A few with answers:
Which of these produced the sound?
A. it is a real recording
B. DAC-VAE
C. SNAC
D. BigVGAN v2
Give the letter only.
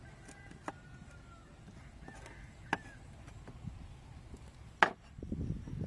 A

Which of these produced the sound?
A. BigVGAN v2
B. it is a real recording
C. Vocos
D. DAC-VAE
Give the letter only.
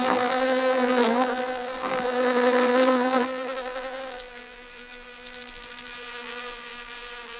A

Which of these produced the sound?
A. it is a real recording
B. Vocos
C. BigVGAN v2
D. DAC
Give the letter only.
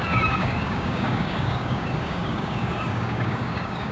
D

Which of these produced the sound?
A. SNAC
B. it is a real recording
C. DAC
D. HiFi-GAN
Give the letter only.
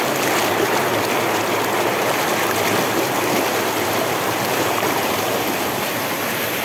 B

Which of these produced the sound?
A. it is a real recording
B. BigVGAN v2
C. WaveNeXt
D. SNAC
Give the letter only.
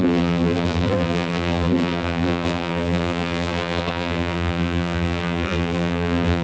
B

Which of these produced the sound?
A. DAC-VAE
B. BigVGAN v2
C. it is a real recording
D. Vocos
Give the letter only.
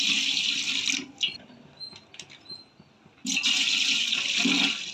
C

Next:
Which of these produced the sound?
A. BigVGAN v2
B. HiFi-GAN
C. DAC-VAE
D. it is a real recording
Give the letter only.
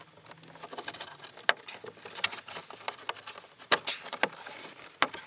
D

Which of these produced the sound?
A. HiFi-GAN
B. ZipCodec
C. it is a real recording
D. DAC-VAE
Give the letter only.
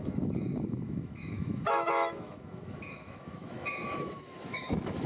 D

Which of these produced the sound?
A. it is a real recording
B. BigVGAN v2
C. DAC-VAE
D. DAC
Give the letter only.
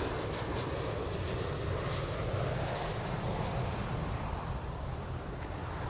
A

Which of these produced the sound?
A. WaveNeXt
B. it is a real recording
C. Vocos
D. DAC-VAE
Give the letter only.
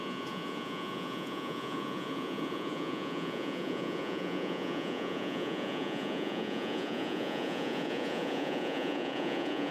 C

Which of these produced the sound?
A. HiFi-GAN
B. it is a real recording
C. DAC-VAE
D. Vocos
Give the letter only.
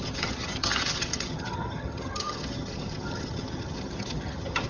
A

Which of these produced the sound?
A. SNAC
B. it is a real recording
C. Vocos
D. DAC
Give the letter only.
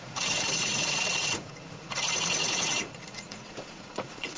C